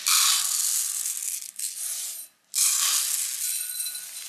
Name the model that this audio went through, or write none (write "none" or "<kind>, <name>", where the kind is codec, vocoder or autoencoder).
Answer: none